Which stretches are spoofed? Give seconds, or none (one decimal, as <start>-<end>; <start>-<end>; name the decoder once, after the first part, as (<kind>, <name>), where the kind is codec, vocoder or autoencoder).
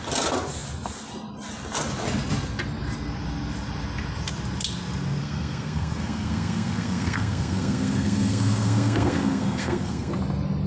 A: 5.2-10.1 (codec, SNAC)